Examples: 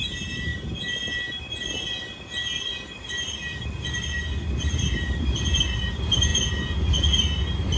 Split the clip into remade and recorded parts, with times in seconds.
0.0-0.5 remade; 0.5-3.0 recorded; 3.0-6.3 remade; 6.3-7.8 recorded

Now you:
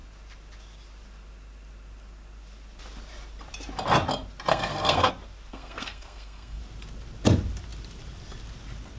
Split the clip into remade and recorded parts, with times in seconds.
0.0-4.5 recorded; 4.5-5.1 remade; 5.1-5.5 recorded; 5.5-6.6 remade; 6.6-9.0 recorded

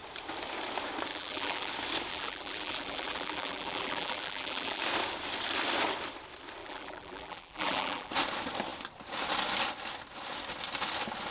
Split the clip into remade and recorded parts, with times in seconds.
0.0-1.1 recorded; 1.1-1.7 remade; 1.7-2.1 recorded; 2.1-4.8 remade; 4.8-6.6 recorded; 6.6-8.1 remade; 8.1-11.3 recorded

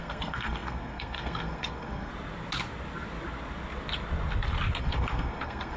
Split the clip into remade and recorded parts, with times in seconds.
0.0-2.1 remade; 2.1-4.8 recorded; 4.8-5.8 remade

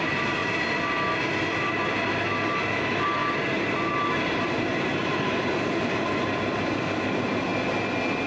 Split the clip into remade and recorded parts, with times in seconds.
0.0-4.7 recorded; 4.7-5.4 remade; 5.4-8.3 recorded

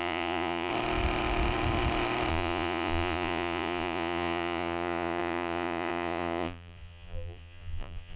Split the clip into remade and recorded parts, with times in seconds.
0.0-0.7 remade; 0.7-2.3 recorded; 2.3-8.2 remade

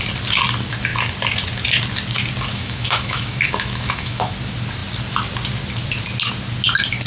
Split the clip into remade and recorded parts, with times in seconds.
0.0-2.5 recorded; 2.5-4.3 remade; 4.3-7.1 recorded

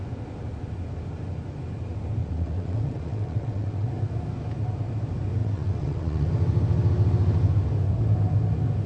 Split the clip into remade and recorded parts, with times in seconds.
0.0-2.2 recorded; 2.2-3.9 remade; 3.9-5.4 recorded; 5.4-6.3 remade; 6.3-8.9 recorded